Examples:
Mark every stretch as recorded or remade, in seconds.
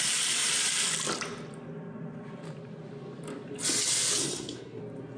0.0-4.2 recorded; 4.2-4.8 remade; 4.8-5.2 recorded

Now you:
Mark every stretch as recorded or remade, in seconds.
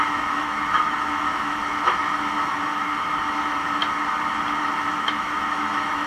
0.0-3.8 remade; 3.8-4.6 recorded; 4.6-6.1 remade